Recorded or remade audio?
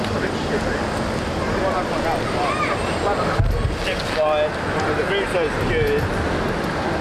recorded